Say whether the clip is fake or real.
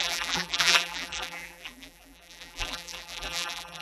fake